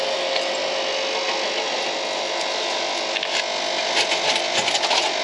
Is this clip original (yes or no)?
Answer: yes